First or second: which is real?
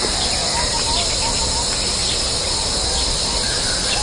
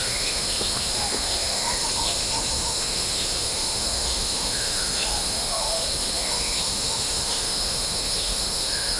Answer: first